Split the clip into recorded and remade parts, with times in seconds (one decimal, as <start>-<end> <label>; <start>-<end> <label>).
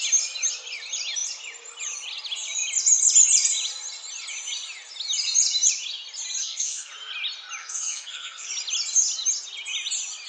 0.0-6.4 recorded; 6.4-6.9 remade; 6.9-7.6 recorded; 7.6-8.5 remade; 8.5-10.3 recorded